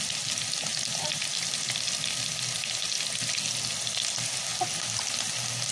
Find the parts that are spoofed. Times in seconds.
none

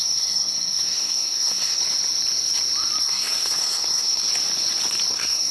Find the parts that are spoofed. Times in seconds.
0.0-1.8 (codec, SNAC); 3.0-4.3; 5.1-5.5

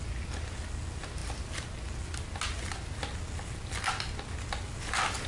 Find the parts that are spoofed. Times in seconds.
none